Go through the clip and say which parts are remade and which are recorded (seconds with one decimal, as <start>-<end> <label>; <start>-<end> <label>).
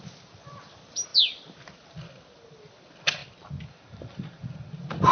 0.0-5.1 recorded